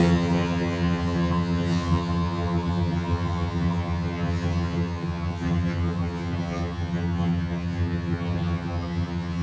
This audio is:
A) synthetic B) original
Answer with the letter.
A